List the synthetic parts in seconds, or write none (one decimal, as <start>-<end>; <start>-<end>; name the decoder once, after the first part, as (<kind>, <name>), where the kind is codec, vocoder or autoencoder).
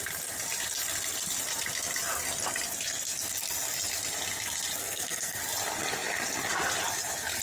4.8-5.4 (codec, SNAC)